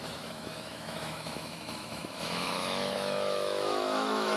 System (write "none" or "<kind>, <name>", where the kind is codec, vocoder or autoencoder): autoencoder, DAC-VAE